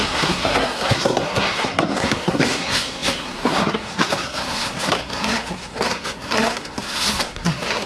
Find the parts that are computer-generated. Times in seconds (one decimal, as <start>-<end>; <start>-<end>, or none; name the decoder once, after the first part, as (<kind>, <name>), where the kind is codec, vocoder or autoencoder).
0.0-7.9 (codec, SNAC)